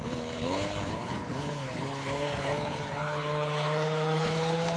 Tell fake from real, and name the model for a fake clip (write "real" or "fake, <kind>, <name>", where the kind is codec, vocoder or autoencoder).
fake, codec, HILCodec